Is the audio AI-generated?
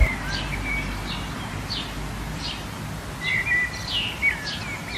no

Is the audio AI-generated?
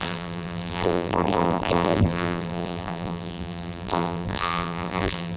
yes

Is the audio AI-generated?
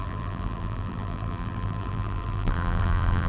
yes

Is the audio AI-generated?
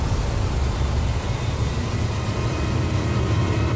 yes